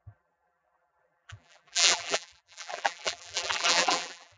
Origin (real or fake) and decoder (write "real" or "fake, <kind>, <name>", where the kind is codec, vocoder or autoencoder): fake, vocoder, BigVGAN v2